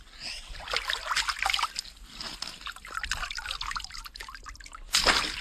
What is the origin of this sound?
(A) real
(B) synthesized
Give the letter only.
A